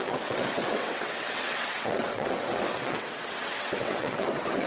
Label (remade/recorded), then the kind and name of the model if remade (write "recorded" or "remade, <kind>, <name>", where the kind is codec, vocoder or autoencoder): remade, vocoder, WaveNeXt